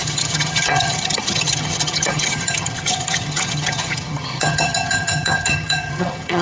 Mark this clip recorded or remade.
remade